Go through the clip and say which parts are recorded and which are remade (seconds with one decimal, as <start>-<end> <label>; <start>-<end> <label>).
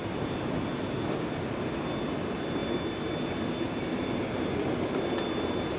0.0-5.8 recorded